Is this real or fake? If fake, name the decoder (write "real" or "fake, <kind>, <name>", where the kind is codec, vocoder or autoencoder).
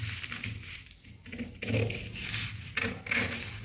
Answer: real